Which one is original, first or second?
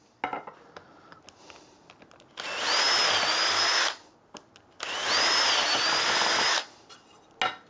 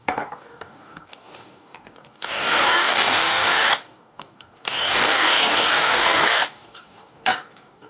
first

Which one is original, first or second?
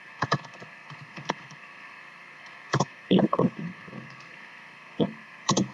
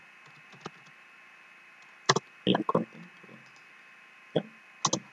second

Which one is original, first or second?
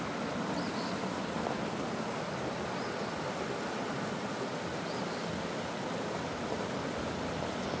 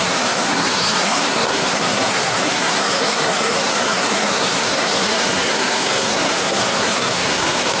first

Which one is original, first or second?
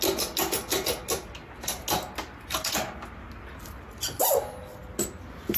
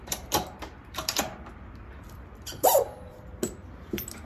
first